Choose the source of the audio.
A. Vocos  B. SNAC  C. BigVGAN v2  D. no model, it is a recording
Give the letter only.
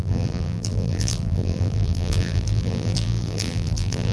C